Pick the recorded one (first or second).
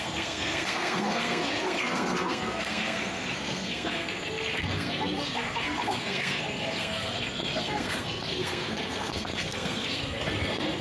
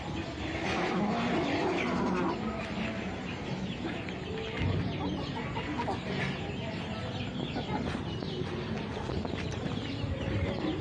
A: second